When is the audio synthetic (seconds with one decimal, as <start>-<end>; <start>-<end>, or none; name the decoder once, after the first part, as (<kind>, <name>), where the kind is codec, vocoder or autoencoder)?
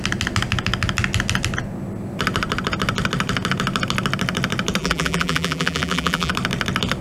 4.8-6.3 (vocoder, BigVGAN v2)